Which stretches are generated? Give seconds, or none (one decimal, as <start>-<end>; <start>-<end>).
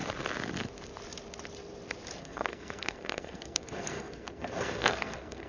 2.2-5.5